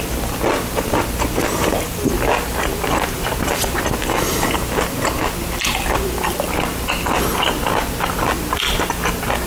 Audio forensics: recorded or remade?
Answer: recorded